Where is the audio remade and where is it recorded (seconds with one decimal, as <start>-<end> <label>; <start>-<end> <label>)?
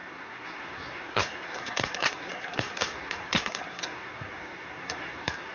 0.0-5.5 remade